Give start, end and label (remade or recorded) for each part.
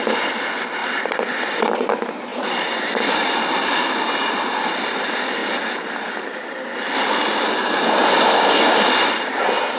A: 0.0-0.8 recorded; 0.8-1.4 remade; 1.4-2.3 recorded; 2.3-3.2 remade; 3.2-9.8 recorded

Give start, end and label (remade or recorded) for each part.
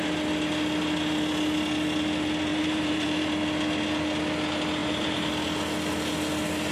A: 0.0-2.5 recorded; 2.5-3.3 remade; 3.3-4.8 recorded; 4.8-5.3 remade; 5.3-6.7 recorded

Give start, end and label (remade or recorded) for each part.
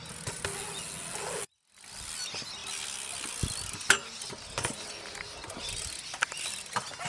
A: 0.0-7.1 recorded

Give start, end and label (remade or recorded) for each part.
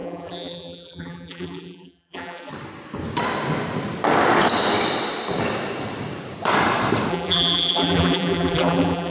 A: 0.0-2.5 remade; 2.5-7.1 recorded; 7.1-9.1 remade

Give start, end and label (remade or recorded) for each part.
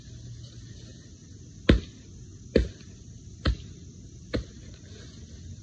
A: 0.0-5.6 recorded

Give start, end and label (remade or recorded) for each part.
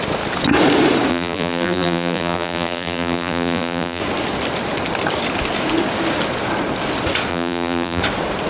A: 0.0-1.1 recorded; 1.1-4.0 remade; 4.0-7.3 recorded; 7.3-8.0 remade; 8.0-8.5 recorded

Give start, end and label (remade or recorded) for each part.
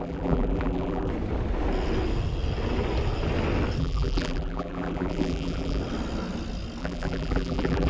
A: 0.0-1.1 remade; 1.1-3.8 recorded; 3.8-5.8 remade; 5.8-6.8 recorded; 6.8-7.9 remade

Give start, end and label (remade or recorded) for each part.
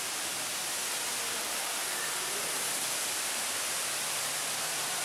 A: 0.0-0.8 remade; 0.8-2.9 recorded; 2.9-5.0 remade